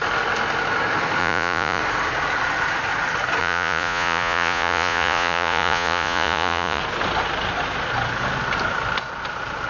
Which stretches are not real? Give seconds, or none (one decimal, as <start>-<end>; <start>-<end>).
1.2-1.8; 3.4-6.8